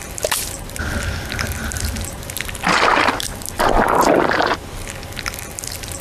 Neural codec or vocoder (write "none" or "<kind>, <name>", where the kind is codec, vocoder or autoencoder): none